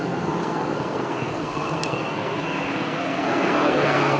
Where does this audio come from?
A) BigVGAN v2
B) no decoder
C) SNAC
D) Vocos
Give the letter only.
C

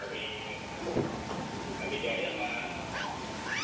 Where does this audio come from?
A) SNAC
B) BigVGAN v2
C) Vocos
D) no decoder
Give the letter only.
D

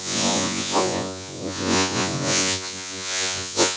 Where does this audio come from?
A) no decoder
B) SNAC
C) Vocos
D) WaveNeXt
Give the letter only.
C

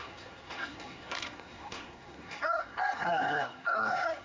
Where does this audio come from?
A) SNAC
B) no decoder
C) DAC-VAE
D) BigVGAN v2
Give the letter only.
A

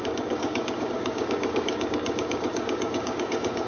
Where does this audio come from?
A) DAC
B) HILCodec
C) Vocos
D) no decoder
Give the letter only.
A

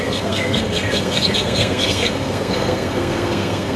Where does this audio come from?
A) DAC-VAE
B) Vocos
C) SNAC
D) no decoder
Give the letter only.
C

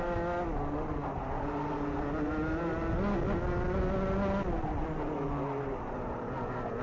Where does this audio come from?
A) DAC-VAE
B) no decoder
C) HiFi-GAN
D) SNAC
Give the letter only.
B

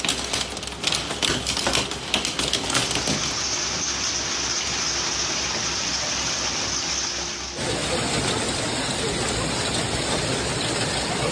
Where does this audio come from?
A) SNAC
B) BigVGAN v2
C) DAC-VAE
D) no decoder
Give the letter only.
D